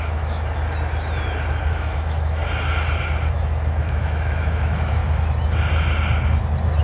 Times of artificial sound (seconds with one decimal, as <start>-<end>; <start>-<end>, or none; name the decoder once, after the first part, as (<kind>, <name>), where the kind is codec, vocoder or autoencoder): 0.0-0.6 (autoencoder, DAC-VAE); 1.7-2.4; 3.3-5.0

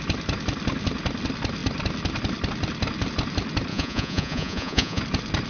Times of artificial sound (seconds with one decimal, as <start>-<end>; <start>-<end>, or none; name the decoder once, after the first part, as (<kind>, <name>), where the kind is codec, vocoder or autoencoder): 3.7-5.0 (vocoder, Vocos)

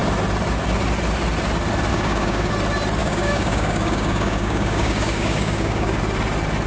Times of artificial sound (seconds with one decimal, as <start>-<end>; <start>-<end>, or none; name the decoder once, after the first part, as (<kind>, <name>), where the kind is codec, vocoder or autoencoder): 1.9-2.5 (codec, DAC); 3.0-6.0

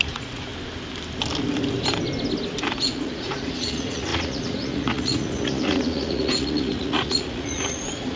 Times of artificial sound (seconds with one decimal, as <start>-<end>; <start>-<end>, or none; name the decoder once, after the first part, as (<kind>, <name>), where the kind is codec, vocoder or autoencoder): 0.0-0.5 (vocoder, Vocos); 2.7-8.2

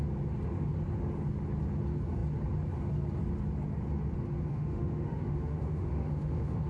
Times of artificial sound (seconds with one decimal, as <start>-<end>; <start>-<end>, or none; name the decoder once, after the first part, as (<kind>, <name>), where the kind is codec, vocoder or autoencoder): 4.5-6.7 (autoencoder, DAC-VAE)

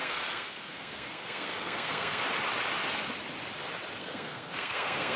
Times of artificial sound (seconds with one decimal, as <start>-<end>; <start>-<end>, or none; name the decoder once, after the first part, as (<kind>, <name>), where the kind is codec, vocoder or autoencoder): 0.0-2.2 (codec, SNAC); 4.0-5.2